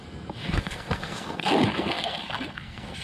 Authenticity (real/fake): fake